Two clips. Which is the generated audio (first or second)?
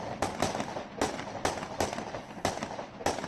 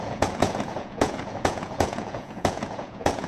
second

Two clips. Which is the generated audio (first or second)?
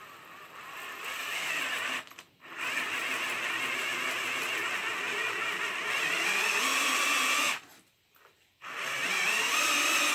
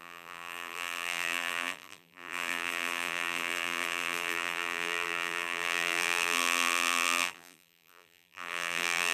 second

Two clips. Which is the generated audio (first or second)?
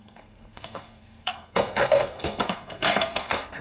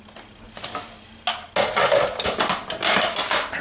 first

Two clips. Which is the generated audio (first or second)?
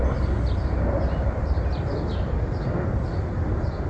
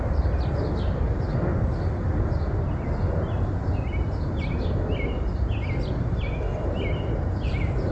first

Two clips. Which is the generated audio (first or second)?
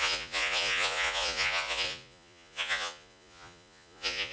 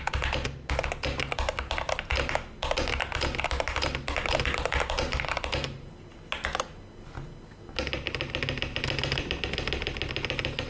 first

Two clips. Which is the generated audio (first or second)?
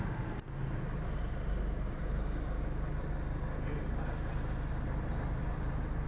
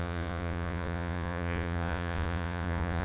second